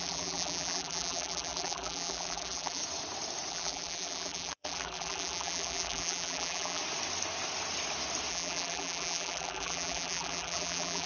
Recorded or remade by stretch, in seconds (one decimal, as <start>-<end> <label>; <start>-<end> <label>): 0.0-2.8 remade; 2.8-3.5 recorded; 3.5-6.8 remade; 6.8-8.3 recorded; 8.3-11.1 remade